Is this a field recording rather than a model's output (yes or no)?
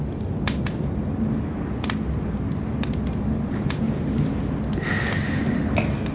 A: yes